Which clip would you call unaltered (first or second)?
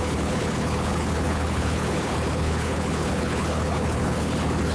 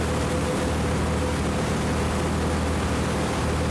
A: second